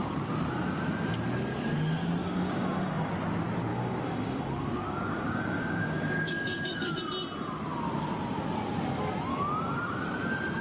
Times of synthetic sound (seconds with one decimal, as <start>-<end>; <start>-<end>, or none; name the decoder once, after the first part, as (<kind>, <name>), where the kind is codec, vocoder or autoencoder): 2.2-3.1 (codec, DAC); 3.7-7.0; 9.3-9.9